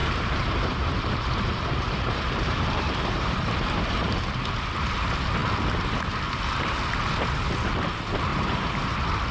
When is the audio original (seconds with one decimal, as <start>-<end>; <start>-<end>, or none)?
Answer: 4.1-8.3; 8.9-9.3